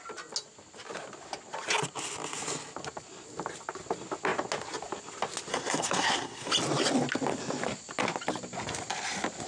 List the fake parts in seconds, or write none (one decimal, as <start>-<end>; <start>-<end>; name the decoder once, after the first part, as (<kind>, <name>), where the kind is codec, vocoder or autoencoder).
5.5-6.5 (codec, SNAC)

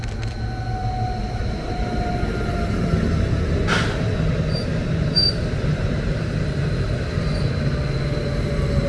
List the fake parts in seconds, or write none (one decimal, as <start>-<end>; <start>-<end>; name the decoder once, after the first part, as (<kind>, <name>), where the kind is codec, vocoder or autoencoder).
1.2-2.1 (vocoder, BigVGAN v2); 4.7-6.2